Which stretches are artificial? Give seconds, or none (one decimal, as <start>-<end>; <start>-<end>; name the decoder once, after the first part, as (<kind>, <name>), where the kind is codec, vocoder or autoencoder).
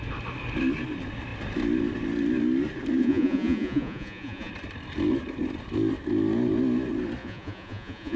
3.0-4.5 (vocoder, Vocos); 7.2-8.2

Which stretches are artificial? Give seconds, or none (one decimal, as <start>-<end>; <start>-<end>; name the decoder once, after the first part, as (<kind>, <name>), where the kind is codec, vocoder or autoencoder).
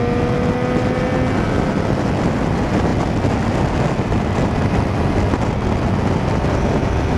none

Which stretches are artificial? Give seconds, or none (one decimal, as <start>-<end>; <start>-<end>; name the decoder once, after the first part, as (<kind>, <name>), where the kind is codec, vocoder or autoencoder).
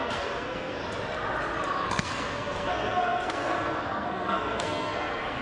0.0-0.8 (codec, SNAC); 1.9-5.4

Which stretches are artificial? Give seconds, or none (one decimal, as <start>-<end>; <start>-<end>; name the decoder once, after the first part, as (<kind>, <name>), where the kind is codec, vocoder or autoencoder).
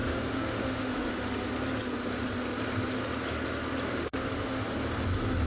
0.0-1.1 (autoencoder, DAC-VAE); 4.0-4.6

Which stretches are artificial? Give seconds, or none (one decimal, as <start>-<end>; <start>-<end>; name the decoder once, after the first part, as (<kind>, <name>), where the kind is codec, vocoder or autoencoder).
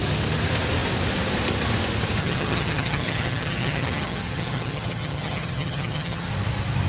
2.2-6.3 (vocoder, HiFi-GAN)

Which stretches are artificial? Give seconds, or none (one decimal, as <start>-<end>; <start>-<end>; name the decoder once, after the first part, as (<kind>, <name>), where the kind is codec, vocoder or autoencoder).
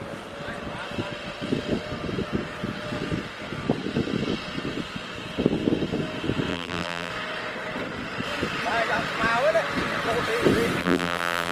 6.5-7.1 (vocoder, BigVGAN v2); 10.8-11.5